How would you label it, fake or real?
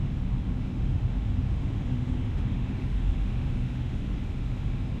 fake